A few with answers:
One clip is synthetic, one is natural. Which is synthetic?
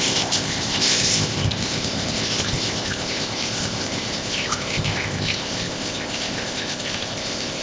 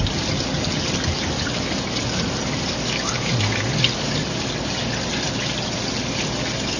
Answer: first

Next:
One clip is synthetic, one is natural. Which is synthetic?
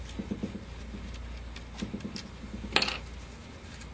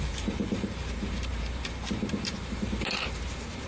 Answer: second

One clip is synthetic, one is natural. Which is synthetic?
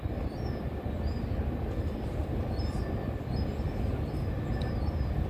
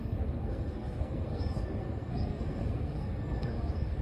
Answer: second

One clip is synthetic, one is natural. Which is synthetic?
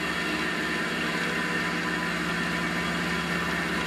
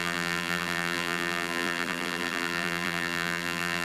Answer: second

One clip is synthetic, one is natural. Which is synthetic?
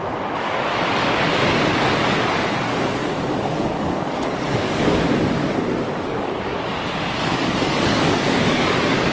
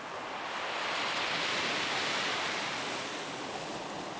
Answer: first